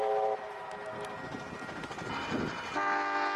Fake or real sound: real